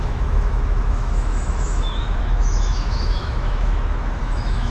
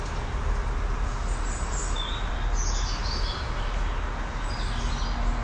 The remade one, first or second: first